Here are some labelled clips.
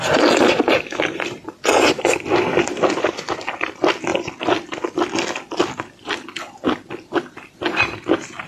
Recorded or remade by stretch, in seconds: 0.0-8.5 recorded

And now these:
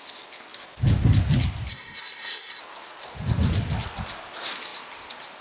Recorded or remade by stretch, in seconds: 0.0-1.7 recorded; 1.7-2.6 remade; 2.6-5.4 recorded

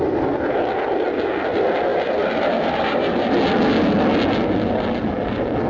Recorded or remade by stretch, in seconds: 0.0-5.7 recorded

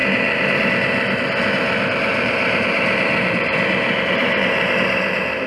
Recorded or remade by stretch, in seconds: 0.0-0.7 remade; 0.7-2.1 recorded; 2.1-5.5 remade

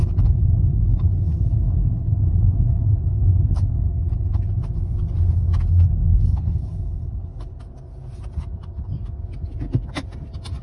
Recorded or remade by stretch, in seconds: 0.0-4.4 remade; 4.4-6.1 recorded; 6.1-7.6 remade; 7.6-10.6 recorded